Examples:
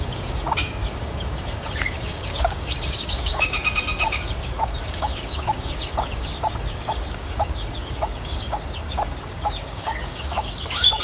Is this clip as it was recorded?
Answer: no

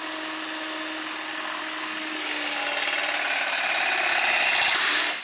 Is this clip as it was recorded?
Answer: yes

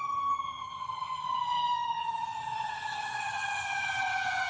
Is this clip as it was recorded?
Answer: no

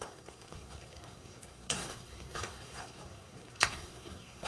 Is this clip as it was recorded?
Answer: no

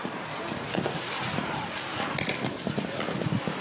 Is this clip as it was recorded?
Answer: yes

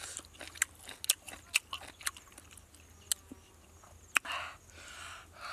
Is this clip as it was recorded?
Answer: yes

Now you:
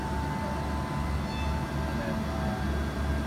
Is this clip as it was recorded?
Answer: yes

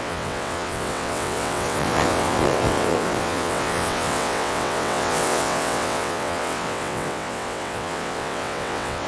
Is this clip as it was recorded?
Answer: no